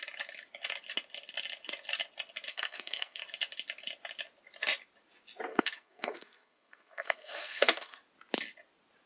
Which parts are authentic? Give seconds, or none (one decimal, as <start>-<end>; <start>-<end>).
0.0-2.5; 3.2-5.5; 8.0-9.1